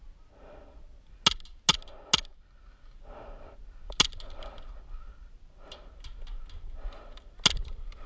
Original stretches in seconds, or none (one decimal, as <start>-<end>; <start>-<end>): 0.0-8.1